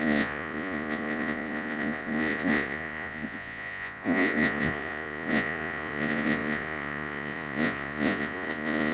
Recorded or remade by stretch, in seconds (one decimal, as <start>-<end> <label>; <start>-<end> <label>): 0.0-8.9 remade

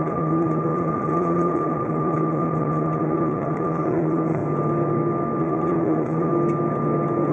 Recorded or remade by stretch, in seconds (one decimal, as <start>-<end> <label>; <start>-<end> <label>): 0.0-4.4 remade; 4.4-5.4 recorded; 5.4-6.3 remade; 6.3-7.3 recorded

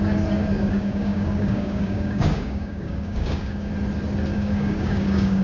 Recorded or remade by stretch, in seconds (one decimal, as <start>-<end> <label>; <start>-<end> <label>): 0.0-0.5 recorded; 0.5-3.7 remade; 3.7-4.3 recorded; 4.3-5.4 remade